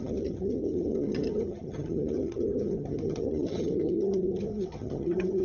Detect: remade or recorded remade